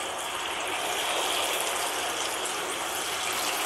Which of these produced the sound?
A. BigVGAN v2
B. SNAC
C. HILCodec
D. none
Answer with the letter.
D